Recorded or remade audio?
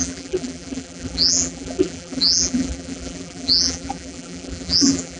remade